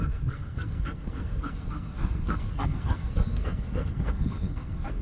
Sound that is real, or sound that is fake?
fake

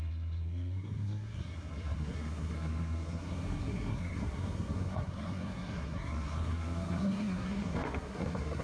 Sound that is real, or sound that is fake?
fake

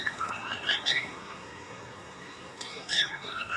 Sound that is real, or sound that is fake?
fake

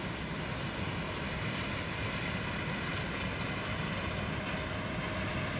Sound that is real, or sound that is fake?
real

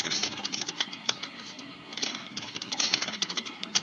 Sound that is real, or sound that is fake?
fake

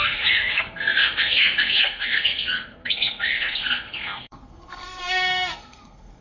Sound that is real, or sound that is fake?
fake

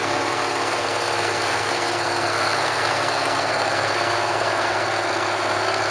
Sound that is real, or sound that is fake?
fake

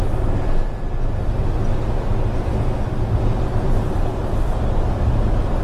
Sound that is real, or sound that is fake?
real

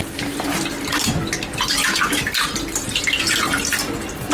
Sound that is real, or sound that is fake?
real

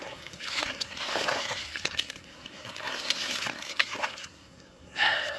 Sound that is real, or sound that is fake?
fake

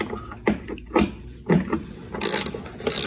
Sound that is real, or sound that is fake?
real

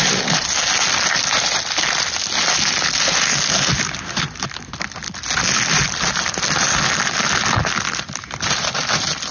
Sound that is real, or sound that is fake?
real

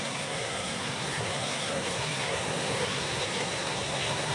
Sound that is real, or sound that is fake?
fake